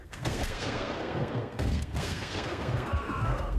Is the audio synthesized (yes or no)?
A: yes